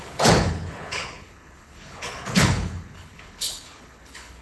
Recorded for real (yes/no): no